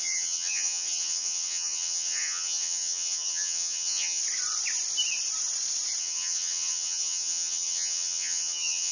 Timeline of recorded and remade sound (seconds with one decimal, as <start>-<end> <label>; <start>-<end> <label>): 0.0-4.2 remade; 4.2-6.0 recorded; 6.0-8.9 remade